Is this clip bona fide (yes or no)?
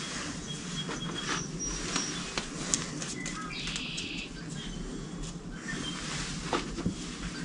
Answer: yes